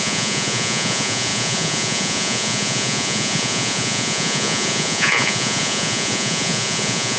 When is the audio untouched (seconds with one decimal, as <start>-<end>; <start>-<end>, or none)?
none